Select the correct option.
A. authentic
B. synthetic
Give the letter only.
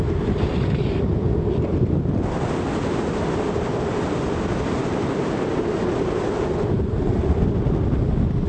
A